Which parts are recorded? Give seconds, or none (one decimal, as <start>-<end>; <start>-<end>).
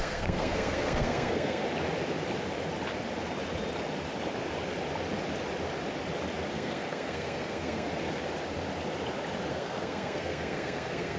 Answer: 1.6-6.5; 7.9-9.5